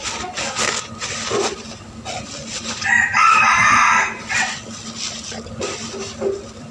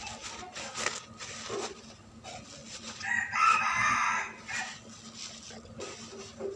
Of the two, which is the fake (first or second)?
first